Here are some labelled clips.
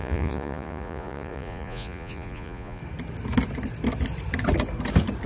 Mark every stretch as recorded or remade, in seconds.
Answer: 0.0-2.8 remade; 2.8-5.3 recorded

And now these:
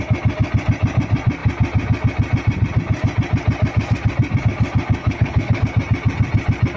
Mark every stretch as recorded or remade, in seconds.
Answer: 0.0-5.0 recorded; 5.0-5.6 remade; 5.6-6.8 recorded

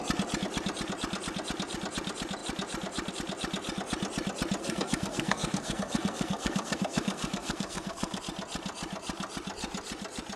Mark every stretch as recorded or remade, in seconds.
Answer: 0.0-4.6 recorded; 4.6-8.2 remade; 8.2-10.4 recorded

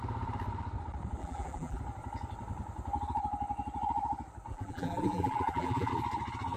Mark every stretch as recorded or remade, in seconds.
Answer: 0.0-1.2 recorded; 1.2-1.8 remade; 1.8-4.5 recorded; 4.5-5.9 remade; 5.9-6.6 recorded

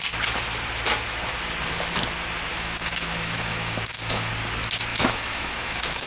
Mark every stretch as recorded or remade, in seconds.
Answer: 0.0-2.5 recorded; 2.5-4.3 remade; 4.3-4.9 recorded; 4.9-6.1 remade

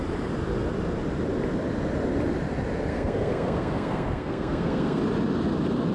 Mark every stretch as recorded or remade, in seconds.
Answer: 0.0-2.9 recorded; 2.9-5.0 remade; 5.0-5.9 recorded

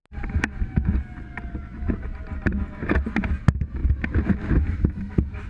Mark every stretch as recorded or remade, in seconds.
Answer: 0.0-5.5 recorded